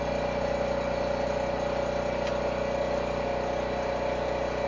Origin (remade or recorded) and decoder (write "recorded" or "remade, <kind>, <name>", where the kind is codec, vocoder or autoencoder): recorded